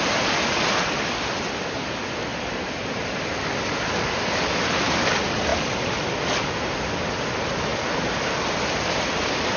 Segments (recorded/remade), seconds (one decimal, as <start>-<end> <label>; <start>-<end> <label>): 0.0-9.6 recorded